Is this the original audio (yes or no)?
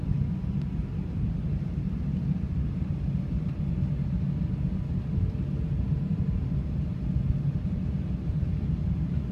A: yes